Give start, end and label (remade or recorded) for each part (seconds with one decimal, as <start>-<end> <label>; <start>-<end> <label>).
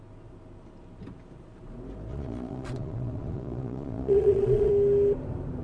0.0-2.1 recorded; 2.1-4.7 remade; 4.7-5.6 recorded